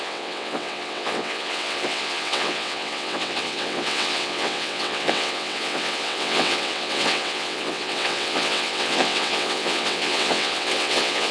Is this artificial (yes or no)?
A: yes